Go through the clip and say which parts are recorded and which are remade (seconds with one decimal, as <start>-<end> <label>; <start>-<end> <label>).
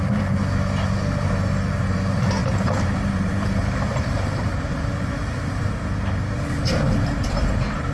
0.0-2.4 recorded; 2.4-4.5 remade; 4.5-7.9 recorded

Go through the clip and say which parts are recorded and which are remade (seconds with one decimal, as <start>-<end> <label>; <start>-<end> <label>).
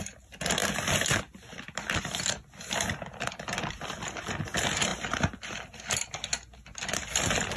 0.0-0.6 recorded; 0.6-2.0 remade; 2.0-4.9 recorded; 4.9-6.0 remade; 6.0-7.6 recorded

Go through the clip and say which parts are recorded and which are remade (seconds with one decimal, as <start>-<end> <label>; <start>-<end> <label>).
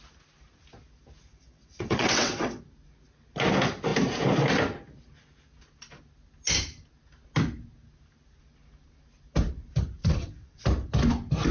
0.0-1.3 recorded; 1.3-2.6 remade; 2.6-10.0 recorded; 10.0-10.6 remade; 10.6-11.5 recorded